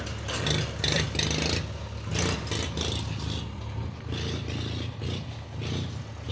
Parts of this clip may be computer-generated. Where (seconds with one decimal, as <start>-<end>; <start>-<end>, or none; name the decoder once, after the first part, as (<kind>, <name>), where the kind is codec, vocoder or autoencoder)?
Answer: none